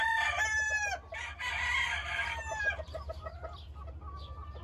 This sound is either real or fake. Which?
real